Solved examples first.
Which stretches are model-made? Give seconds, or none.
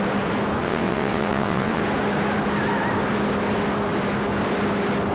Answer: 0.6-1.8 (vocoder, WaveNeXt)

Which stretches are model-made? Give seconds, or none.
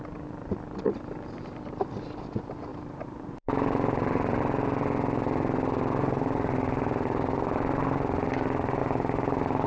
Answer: 2.7-4.4 (vocoder, BigVGAN v2); 8.8-9.7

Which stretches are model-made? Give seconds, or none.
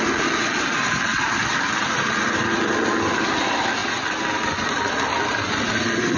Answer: none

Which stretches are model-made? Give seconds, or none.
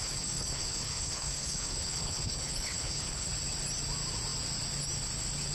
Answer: 0.0-3.3 (codec, HILCodec)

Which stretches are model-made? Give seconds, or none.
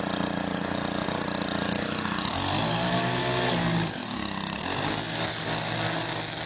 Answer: 5.3-6.1 (vocoder, BigVGAN v2)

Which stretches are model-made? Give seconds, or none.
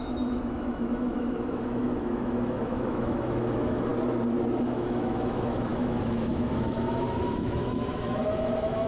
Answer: 0.0-3.9 (autoencoder, DAC-VAE); 4.6-8.9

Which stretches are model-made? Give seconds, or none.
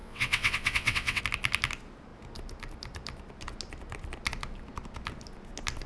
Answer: 0.0-1.2 (vocoder, WaveNeXt)